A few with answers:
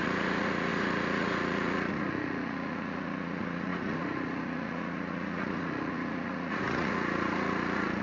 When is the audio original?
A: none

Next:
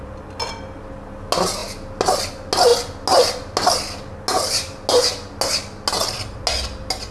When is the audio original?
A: 0.0-7.1

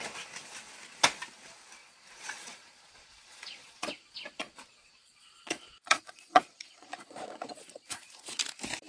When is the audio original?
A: 0.0-1.8; 3.9-4.4; 8.4-8.9

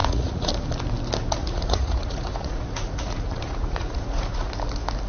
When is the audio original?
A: 0.5-1.4; 4.5-5.1

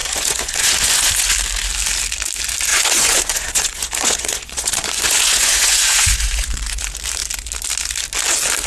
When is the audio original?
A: 1.1-2.7; 6.8-8.7

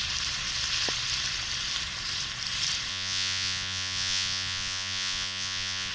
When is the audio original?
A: 0.0-2.9

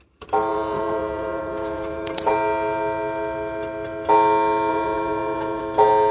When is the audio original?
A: 0.0-0.5; 2.3-4.7; 5.6-6.1